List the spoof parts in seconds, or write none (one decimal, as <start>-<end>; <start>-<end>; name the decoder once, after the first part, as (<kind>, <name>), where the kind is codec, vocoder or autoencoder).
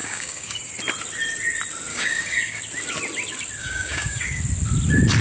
0.0-0.6 (codec, DAC); 1.9-2.6; 3.6-4.4